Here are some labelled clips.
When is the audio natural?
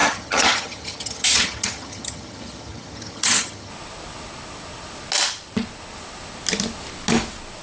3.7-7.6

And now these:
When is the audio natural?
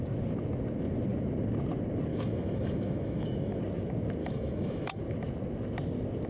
0.0-2.1; 3.6-4.2; 5.0-6.3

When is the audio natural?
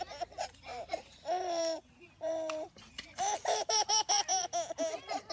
0.0-0.7; 3.9-5.3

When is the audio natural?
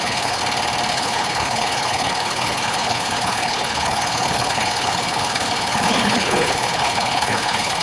0.4-0.9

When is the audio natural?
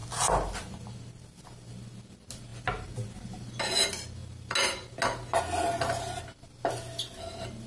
0.0-7.7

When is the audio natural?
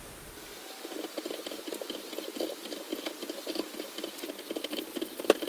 0.0-5.5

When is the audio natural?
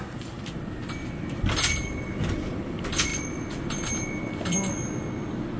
0.0-5.6